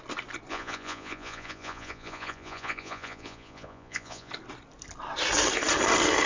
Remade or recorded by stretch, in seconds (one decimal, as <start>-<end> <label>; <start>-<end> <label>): 0.0-0.5 recorded; 0.5-4.3 remade; 4.3-6.3 recorded

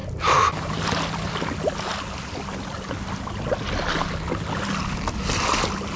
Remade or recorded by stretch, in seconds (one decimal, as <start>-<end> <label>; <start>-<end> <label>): 0.0-6.0 recorded